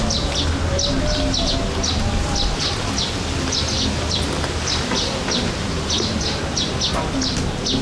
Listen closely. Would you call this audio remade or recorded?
recorded